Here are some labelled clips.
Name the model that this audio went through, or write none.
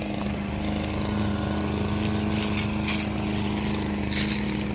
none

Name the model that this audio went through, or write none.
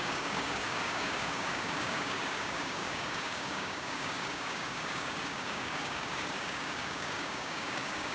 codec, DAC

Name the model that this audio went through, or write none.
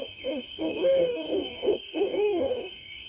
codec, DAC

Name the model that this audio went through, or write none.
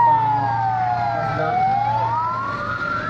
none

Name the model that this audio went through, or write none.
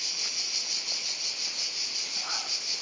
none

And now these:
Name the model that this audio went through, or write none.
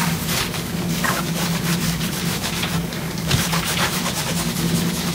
codec, DAC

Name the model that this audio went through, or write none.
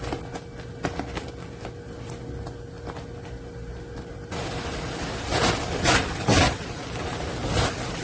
none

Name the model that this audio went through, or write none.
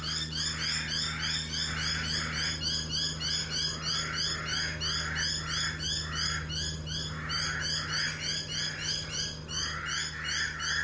none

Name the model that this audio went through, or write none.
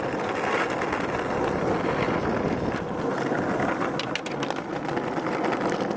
none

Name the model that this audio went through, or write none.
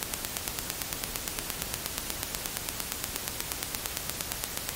none